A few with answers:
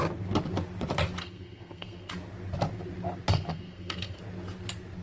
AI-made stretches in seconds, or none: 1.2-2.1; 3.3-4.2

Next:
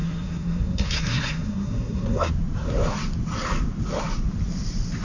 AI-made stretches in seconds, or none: 0.0-2.3